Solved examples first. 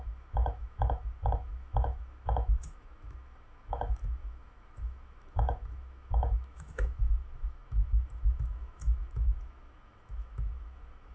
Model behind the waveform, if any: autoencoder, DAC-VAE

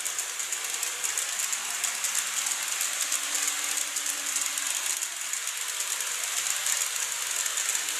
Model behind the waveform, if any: none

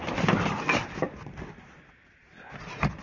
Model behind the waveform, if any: none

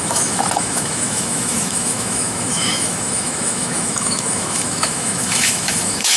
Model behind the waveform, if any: autoencoder, DAC-VAE